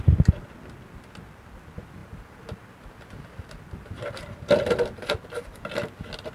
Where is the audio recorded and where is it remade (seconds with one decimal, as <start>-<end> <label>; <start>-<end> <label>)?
0.0-6.3 recorded